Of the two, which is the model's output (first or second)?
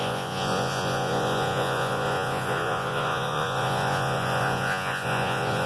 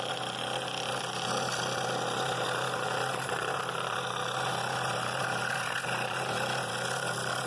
first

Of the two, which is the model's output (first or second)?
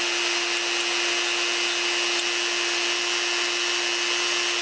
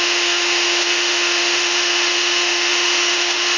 second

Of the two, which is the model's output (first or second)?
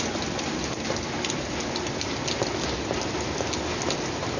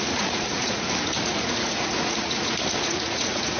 second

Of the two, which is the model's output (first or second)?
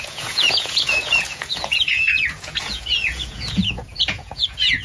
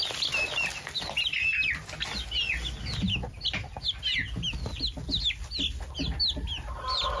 first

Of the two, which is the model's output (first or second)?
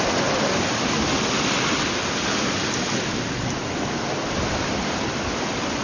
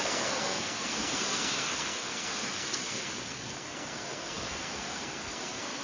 second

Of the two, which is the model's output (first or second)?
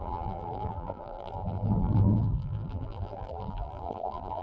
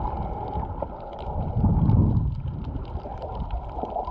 first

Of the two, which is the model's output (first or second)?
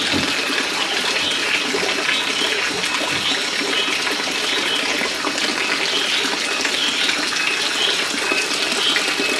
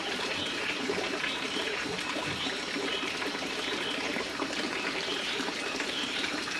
second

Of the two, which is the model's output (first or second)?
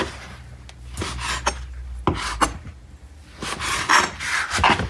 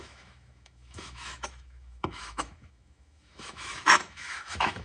second